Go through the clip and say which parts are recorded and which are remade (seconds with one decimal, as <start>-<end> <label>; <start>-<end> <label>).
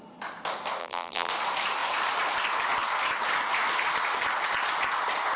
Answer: 0.0-0.8 recorded; 0.8-1.3 remade; 1.3-5.4 recorded